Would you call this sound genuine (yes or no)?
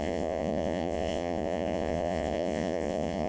no